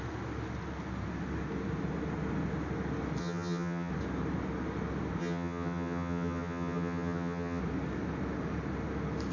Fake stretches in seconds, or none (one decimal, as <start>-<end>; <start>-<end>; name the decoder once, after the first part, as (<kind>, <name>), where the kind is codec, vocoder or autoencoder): 3.2-3.9 (vocoder, HiFi-GAN); 5.2-7.6